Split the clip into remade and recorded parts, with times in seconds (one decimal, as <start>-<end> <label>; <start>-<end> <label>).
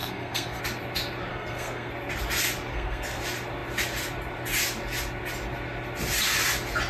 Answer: 0.0-0.6 remade; 0.6-1.3 recorded; 1.3-1.9 remade; 1.9-2.7 recorded; 2.7-3.2 remade; 3.2-6.9 recorded